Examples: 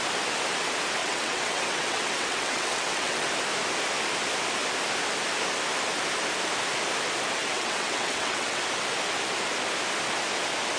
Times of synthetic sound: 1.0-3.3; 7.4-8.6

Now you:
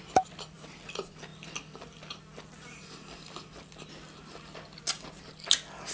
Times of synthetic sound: none

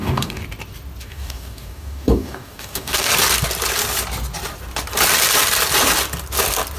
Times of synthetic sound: 0.0-0.4; 1.0-3.1

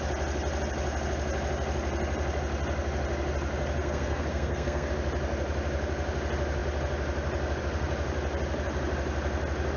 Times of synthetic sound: 3.8-4.9

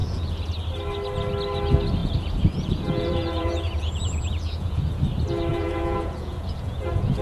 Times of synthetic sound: 0.0-0.5; 2.0-5.0; 5.5-7.2

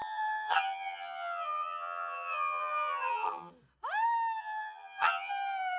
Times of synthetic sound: 0.0-3.5; 4.4-5.3